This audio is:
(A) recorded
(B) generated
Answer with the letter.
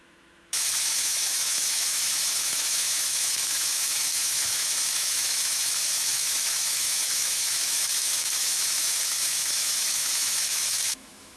B